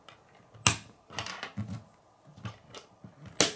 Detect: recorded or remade recorded